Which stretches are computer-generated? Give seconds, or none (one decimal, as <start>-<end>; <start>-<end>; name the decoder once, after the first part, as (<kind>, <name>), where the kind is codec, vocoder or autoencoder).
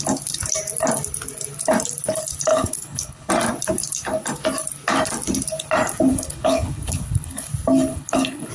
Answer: 2.5-3.3 (codec, HILCodec); 6.1-7.5; 7.9-8.5